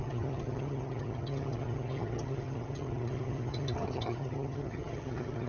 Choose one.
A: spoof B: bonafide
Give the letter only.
A